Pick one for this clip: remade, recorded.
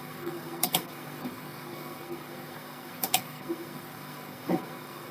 remade